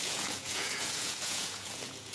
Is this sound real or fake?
fake